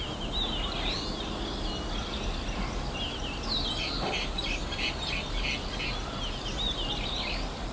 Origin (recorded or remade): recorded